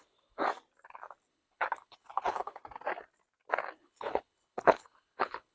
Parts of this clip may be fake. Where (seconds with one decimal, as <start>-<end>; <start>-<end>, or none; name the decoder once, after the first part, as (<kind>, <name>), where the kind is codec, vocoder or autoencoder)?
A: 0.0-0.4 (codec, HILCodec); 1.3-2.6; 3.8-5.5